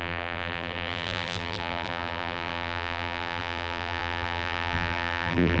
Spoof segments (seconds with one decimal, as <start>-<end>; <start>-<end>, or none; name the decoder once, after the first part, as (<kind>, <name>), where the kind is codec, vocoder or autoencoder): 0.0-5.6 (vocoder, BigVGAN v2)